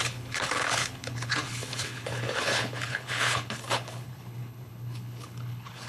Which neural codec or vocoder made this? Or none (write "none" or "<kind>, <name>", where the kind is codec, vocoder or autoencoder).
codec, HILCodec